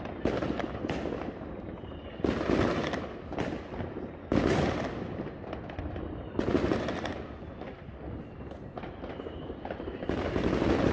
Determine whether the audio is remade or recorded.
recorded